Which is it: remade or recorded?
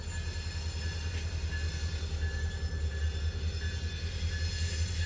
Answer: recorded